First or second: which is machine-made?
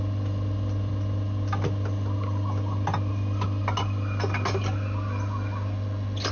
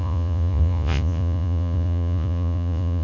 second